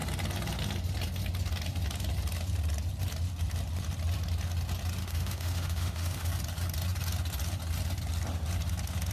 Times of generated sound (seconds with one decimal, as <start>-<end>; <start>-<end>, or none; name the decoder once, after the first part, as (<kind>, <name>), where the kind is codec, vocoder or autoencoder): 5.0-6.3 (autoencoder, DAC-VAE)